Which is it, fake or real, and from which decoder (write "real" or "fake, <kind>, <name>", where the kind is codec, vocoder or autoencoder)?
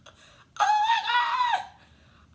real